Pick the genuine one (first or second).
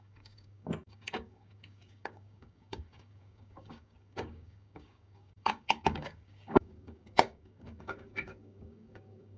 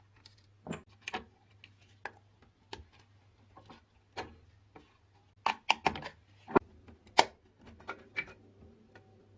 second